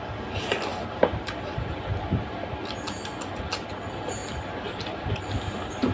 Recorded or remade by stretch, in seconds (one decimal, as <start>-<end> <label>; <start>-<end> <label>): 0.0-0.7 recorded; 0.7-1.7 remade; 1.7-4.2 recorded; 4.2-5.1 remade; 5.1-5.9 recorded